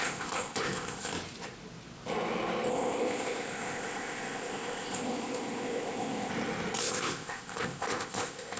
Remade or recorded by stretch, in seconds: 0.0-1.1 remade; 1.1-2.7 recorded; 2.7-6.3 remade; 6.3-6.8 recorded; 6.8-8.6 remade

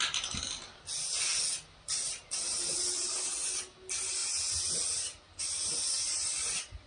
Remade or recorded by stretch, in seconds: 0.0-6.9 recorded

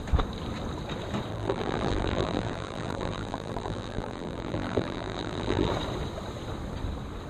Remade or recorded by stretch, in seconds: 0.0-1.3 recorded; 1.3-5.7 remade; 5.7-7.3 recorded

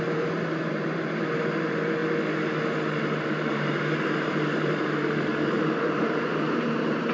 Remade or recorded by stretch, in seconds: 0.0-2.0 remade; 2.0-3.2 recorded; 3.2-7.1 remade

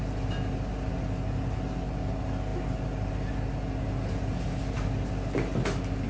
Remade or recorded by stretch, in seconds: 0.0-6.1 recorded